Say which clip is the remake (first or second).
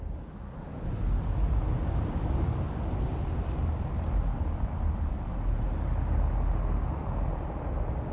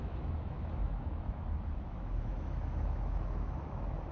second